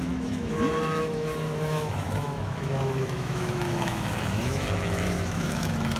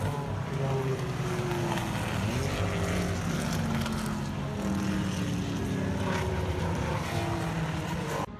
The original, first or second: second